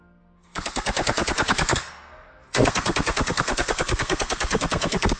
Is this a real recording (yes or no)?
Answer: no